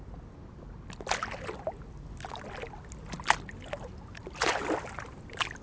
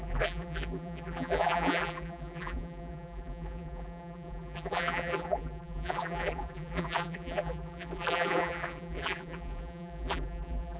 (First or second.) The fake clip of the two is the second